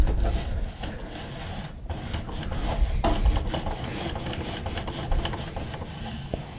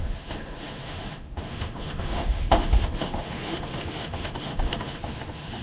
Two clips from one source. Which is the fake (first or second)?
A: second